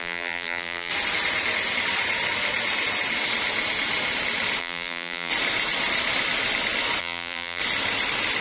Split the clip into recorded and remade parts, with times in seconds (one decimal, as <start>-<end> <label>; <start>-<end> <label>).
0.0-0.9 remade; 0.9-4.6 recorded; 4.6-5.3 remade; 5.3-7.0 recorded; 7.0-7.6 remade; 7.6-8.4 recorded